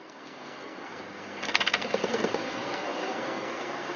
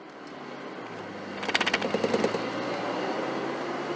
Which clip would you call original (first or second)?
second